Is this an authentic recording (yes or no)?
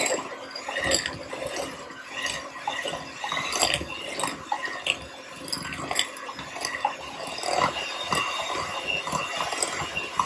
yes